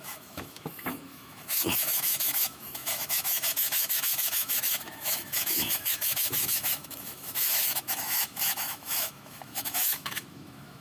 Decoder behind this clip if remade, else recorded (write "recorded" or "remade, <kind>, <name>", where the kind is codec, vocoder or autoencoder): remade, autoencoder, DAC-VAE